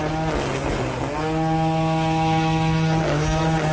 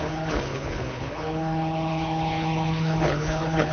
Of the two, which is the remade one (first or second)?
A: second